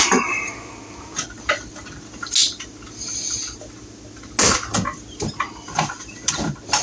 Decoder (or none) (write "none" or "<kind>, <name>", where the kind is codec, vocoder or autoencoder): none